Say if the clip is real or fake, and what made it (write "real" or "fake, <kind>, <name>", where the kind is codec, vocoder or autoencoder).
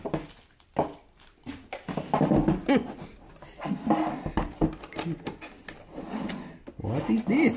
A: real